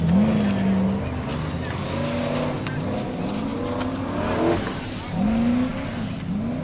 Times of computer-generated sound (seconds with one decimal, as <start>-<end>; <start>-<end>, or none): none